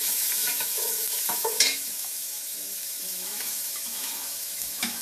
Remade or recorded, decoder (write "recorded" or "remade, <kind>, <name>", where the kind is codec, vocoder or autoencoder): remade, autoencoder, DAC-VAE